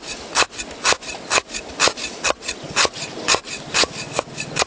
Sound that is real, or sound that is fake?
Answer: real